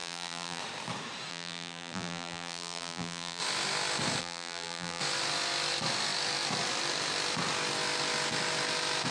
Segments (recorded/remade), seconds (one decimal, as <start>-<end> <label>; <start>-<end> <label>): 0.0-0.6 remade; 0.6-1.3 recorded; 1.3-3.4 remade; 3.4-4.2 recorded; 4.2-5.0 remade; 5.0-9.1 recorded